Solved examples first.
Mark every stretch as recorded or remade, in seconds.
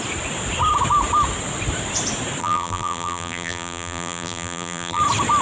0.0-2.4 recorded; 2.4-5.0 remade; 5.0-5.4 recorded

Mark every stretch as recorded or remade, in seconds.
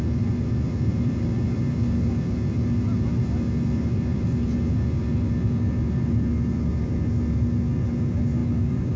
0.0-0.9 recorded; 0.9-1.6 remade; 1.6-4.1 recorded; 4.1-5.0 remade; 5.0-8.4 recorded; 8.4-9.0 remade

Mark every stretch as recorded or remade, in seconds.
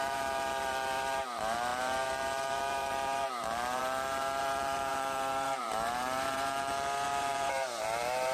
0.0-8.3 remade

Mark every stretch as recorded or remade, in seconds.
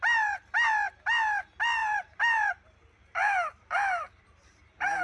0.0-1.8 recorded; 1.8-2.5 remade; 2.5-3.2 recorded; 3.2-5.0 remade